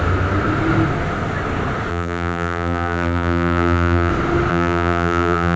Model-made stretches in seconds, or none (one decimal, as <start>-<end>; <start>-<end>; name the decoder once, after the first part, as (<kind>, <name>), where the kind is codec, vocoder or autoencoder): 1.9-4.1 (vocoder, BigVGAN v2); 4.5-5.6